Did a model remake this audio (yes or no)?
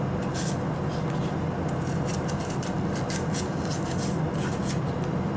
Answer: no